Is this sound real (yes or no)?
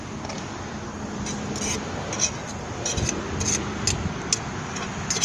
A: yes